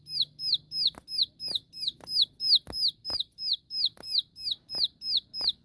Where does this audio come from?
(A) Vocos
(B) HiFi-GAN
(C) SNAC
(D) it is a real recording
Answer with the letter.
D